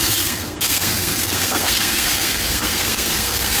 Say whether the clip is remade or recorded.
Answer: remade